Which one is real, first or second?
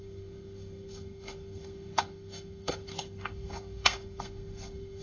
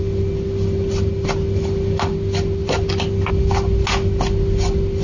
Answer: second